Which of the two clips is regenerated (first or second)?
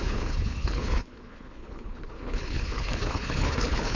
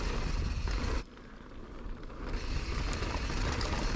first